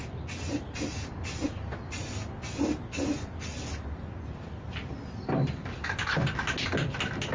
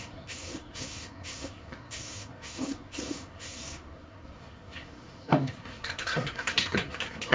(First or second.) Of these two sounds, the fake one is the second